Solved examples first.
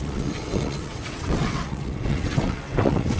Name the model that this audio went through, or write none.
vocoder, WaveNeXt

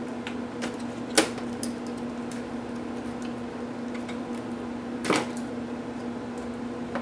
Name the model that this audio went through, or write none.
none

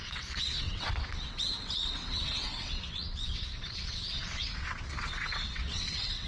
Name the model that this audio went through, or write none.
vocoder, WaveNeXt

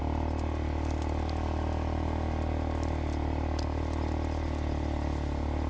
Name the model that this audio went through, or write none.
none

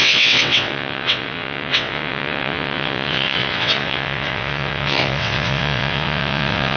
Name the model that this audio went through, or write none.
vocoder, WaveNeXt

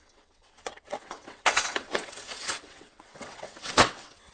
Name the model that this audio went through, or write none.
vocoder, WaveNeXt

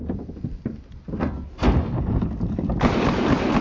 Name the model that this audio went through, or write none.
none